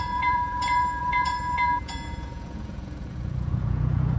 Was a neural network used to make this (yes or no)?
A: yes